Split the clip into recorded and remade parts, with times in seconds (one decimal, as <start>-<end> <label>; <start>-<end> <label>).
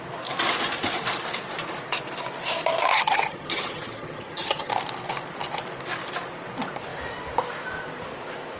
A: 0.0-2.9 recorded; 2.9-4.7 remade; 4.7-8.6 recorded